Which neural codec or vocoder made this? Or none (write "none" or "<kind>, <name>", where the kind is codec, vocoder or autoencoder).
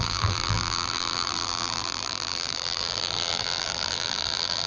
vocoder, BigVGAN v2